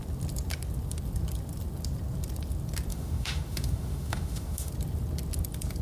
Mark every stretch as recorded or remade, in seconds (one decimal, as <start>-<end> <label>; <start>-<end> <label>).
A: 0.0-2.9 recorded; 2.9-4.7 remade; 4.7-5.8 recorded